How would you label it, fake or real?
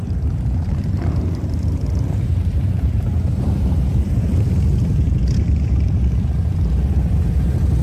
fake